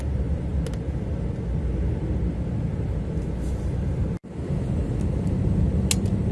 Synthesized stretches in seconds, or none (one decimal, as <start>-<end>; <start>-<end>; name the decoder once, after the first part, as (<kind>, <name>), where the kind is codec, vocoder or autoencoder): none